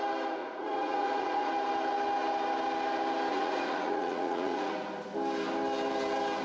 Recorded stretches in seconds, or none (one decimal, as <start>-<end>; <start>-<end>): 0.0-0.4; 1.5-3.3; 4.7-6.4